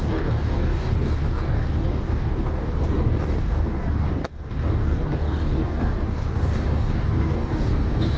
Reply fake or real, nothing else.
fake